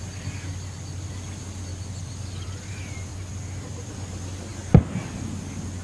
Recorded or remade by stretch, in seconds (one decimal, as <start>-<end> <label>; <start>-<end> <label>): 0.0-0.5 recorded; 0.5-1.1 remade; 1.1-1.7 recorded; 1.7-2.7 remade; 2.7-3.1 recorded; 3.1-3.9 remade; 3.9-5.8 recorded